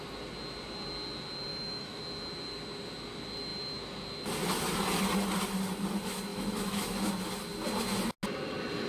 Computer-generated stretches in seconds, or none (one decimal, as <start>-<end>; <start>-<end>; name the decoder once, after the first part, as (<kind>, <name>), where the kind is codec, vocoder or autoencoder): 1.5-2.0 (autoencoder, DAC-VAE); 6.3-7.1